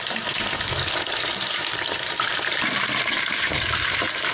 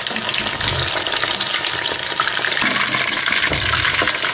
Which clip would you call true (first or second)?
second